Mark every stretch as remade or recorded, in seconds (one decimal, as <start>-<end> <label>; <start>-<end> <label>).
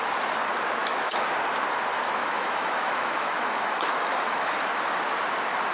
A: 0.0-0.8 recorded; 0.8-1.3 remade; 1.3-2.2 recorded; 2.2-4.5 remade; 4.5-5.7 recorded